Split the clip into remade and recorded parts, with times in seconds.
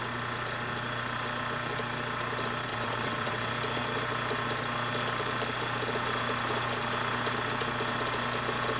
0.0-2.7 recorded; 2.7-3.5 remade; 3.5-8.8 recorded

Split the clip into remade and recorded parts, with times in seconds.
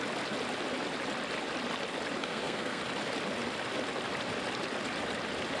0.0-2.2 recorded; 2.2-2.8 remade; 2.8-5.6 recorded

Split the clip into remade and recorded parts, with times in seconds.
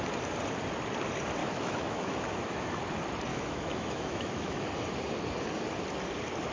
0.0-1.4 recorded; 1.4-2.8 remade; 2.8-3.3 recorded; 3.3-4.6 remade; 4.6-6.5 recorded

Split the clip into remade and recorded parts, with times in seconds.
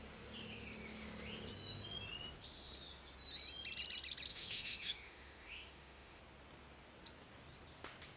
0.0-4.3 recorded; 4.3-6.2 remade; 6.2-8.2 recorded